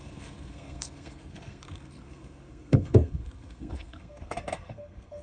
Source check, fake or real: fake